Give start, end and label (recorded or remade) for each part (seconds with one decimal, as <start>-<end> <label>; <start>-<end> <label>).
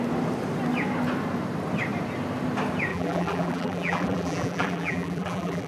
0.0-2.9 recorded; 2.9-5.7 remade